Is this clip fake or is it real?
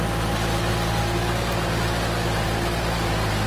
real